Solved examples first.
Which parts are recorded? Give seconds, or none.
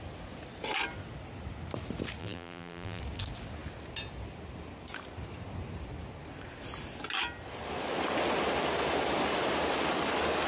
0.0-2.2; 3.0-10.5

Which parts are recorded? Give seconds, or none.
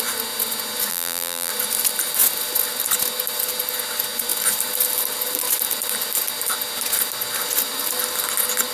0.0-0.9; 1.5-8.7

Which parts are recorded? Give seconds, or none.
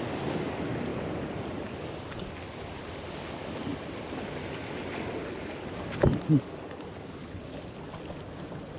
0.0-0.9; 1.8-8.8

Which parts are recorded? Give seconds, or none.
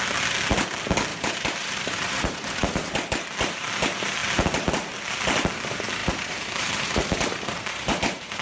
0.0-1.1; 2.9-6.0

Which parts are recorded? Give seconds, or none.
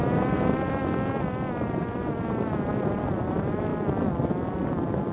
0.8-1.6; 3.7-4.3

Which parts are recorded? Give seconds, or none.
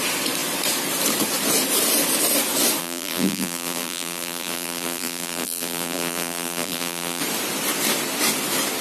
0.0-2.8; 7.2-8.8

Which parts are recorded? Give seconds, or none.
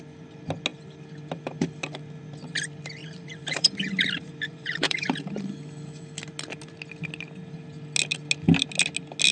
0.0-3.0; 5.5-9.3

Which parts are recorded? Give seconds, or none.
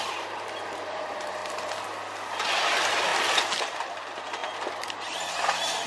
1.4-2.2; 3.1-3.6; 4.4-5.3